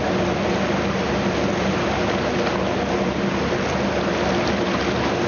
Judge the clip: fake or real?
real